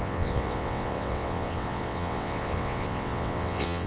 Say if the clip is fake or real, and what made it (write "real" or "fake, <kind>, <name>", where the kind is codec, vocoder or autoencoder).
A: fake, vocoder, WaveNeXt